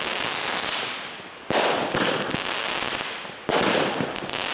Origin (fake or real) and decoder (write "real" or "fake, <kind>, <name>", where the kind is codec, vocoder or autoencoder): real